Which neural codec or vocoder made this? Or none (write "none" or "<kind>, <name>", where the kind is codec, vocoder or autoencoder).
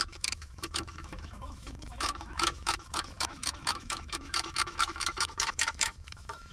autoencoder, DAC-VAE